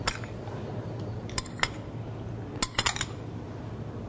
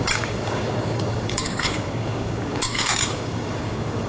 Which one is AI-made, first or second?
second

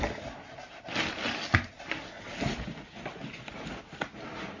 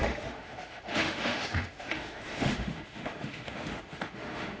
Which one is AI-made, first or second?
second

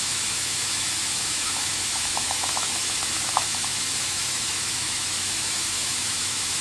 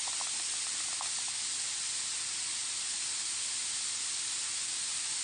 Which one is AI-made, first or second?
first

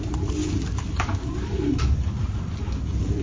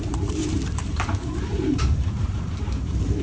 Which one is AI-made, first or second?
second